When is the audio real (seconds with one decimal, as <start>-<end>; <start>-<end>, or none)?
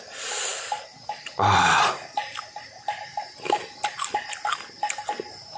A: 0.0-5.6